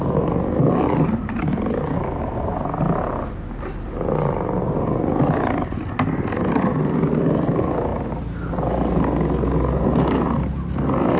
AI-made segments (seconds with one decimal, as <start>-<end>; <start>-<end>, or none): none